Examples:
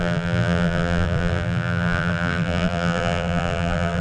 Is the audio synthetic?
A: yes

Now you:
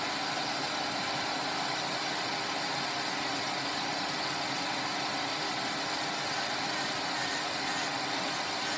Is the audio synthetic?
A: no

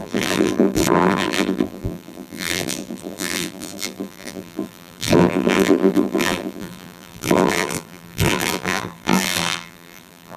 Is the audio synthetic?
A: yes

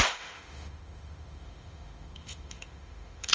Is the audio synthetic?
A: yes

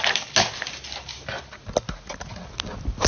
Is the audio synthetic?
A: no